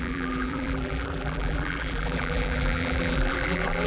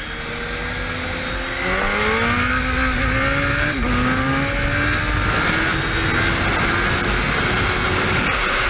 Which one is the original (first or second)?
second